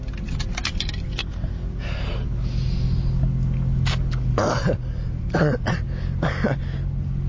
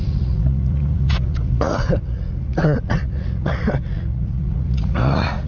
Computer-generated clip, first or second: second